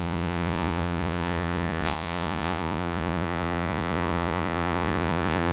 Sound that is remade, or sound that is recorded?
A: remade